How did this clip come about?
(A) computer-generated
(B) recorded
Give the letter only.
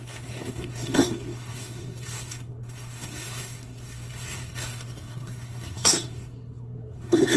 A